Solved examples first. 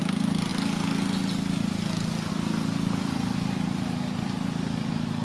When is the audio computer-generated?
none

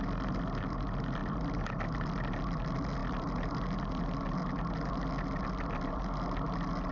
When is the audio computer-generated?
none

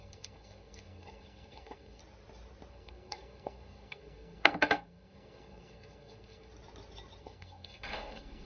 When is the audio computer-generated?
0.0-2.0; 2.7-6.5; 7.2-8.4

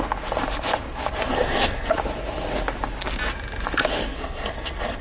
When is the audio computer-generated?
1.3-1.9; 4.0-5.0

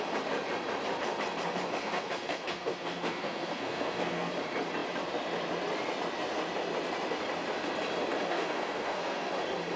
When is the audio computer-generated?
1.8-4.3; 8.3-9.3

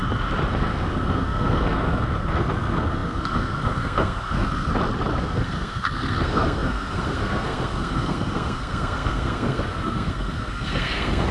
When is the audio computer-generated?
0.5-4.7; 5.2-11.3

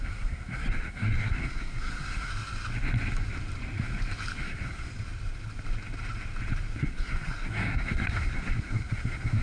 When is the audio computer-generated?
0.0-2.3; 4.4-4.9; 6.8-9.4